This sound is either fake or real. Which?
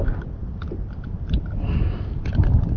real